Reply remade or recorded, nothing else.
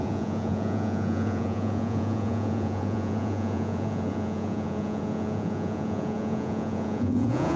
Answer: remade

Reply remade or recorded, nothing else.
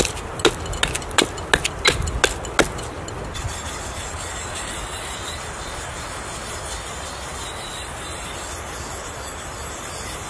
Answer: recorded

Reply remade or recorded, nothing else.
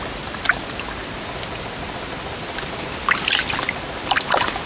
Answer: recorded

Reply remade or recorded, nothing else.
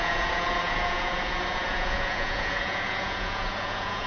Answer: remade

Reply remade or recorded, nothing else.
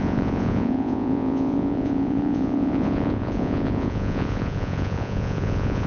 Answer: remade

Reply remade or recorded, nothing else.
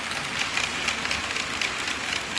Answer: recorded